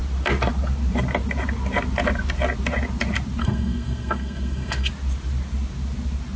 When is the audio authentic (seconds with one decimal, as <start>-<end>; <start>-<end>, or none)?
0.0-3.4; 4.9-6.4